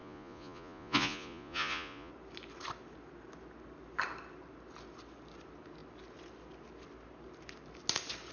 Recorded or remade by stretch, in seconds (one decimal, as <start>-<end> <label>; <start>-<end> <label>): 0.0-2.1 remade; 2.1-8.3 recorded